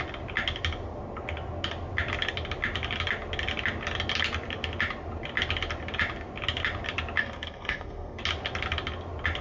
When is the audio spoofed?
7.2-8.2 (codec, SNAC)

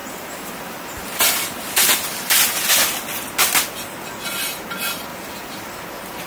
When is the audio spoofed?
0.0-2.6 (vocoder, BigVGAN v2); 5.1-5.8